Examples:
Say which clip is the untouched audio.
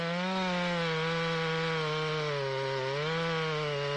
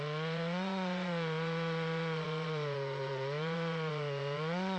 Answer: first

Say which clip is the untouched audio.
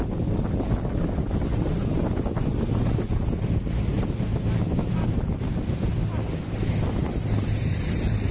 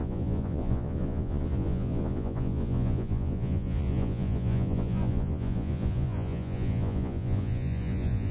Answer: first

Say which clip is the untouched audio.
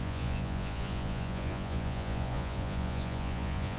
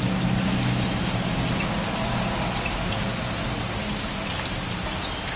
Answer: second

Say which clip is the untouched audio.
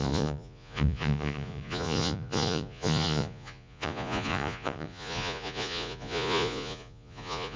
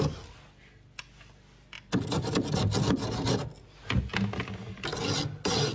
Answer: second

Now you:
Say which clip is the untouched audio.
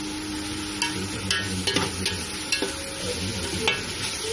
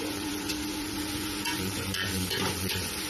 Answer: first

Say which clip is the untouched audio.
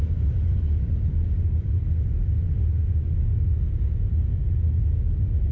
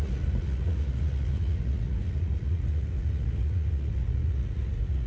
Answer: first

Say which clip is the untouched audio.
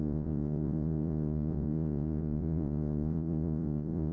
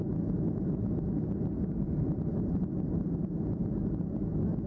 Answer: second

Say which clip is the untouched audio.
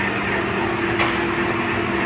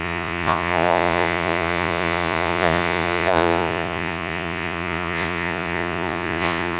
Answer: first